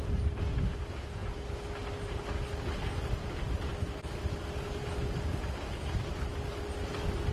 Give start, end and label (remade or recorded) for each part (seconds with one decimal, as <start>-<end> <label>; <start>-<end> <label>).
0.0-7.3 recorded